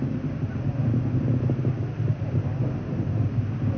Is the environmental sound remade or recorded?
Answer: recorded